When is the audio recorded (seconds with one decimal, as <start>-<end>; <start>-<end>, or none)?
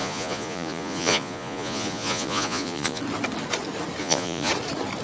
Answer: 3.0-4.0; 4.5-5.0